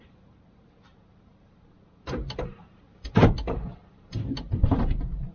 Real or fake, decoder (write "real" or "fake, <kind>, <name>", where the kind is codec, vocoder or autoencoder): fake, vocoder, BigVGAN v2